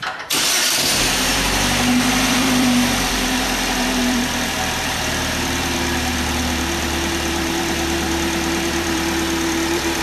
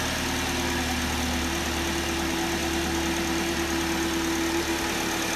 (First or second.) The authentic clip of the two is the second